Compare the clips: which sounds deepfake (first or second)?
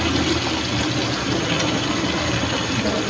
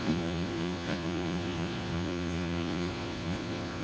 second